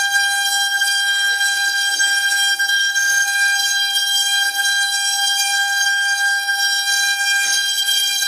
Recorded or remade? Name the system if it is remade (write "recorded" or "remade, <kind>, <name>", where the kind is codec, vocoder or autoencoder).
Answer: remade, codec, SNAC